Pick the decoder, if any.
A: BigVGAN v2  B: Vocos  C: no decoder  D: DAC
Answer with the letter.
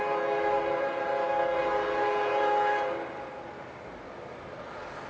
C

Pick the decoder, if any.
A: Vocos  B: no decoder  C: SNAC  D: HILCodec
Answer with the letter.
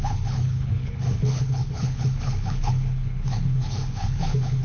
D